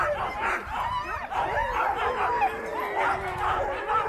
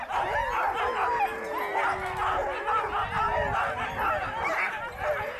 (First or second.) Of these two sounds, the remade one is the first